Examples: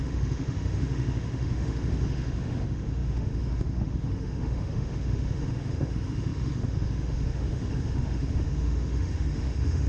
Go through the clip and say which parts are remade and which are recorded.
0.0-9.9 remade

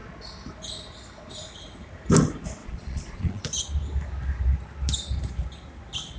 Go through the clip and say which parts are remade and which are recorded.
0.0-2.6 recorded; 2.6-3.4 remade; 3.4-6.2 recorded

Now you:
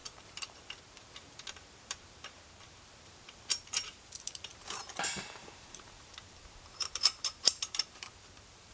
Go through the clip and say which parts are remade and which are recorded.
0.0-8.7 remade